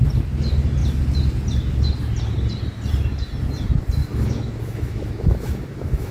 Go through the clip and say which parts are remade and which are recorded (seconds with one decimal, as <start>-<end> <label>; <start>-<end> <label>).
0.0-4.0 recorded; 4.0-6.1 remade

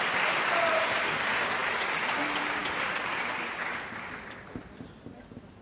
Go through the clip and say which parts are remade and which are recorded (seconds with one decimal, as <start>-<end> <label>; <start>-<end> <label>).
0.0-1.6 remade; 1.6-2.2 recorded; 2.2-2.6 remade; 2.6-3.1 recorded; 3.1-5.6 remade

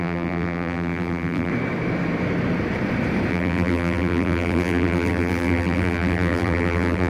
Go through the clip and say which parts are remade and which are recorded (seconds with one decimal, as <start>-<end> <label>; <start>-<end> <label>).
0.0-1.5 remade; 1.5-3.3 recorded; 3.3-7.1 remade